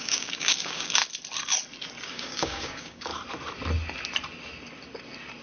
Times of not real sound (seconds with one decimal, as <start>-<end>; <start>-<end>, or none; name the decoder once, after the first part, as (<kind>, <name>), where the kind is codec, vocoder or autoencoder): 0.0-1.0 (codec, DAC); 2.1-3.1